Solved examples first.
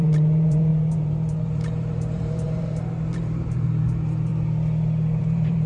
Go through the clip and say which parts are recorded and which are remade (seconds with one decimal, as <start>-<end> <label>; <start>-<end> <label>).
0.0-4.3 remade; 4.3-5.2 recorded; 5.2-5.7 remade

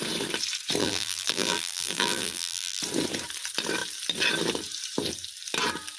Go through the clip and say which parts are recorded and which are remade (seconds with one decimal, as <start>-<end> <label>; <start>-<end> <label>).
0.0-0.8 recorded; 0.8-2.8 remade; 2.8-6.0 recorded

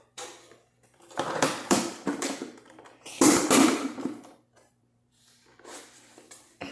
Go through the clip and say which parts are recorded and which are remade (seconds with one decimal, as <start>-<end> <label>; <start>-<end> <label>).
0.0-6.7 remade

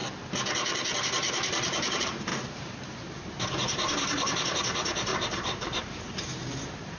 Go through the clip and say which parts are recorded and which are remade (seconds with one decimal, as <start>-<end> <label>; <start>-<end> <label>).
0.0-1.0 recorded; 1.0-7.0 remade